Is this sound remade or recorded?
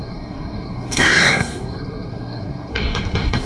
remade